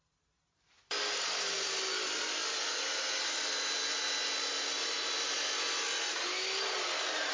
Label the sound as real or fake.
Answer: real